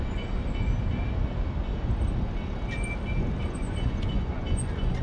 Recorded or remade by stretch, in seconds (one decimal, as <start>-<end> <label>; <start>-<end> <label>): 0.0-0.4 remade; 0.4-3.4 recorded; 3.4-5.0 remade